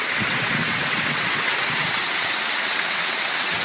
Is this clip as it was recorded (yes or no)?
no